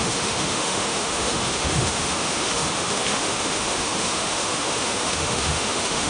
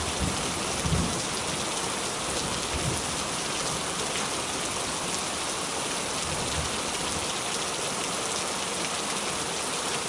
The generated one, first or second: first